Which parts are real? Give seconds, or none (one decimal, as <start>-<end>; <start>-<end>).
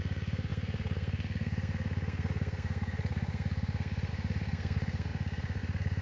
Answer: none